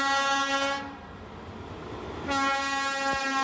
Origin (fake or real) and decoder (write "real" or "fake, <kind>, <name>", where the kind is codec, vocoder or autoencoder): real